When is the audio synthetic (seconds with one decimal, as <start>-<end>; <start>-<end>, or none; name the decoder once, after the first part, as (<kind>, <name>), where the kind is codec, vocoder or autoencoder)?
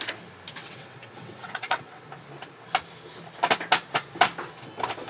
0.6-2.1 (vocoder, WaveNeXt)